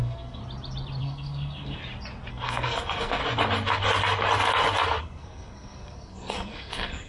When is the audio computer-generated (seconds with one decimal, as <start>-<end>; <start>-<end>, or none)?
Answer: 0.0-0.4; 1.0-1.8; 2.3-3.2; 5.0-7.1